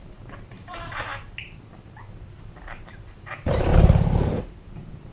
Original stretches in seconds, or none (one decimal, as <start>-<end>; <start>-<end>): 1.1-1.9; 3.7-4.4